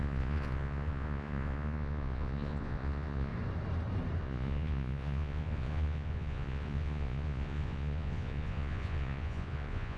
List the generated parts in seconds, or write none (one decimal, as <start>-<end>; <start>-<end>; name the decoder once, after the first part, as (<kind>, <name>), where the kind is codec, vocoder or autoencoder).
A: 0.0-3.3 (vocoder, Vocos); 4.2-10.0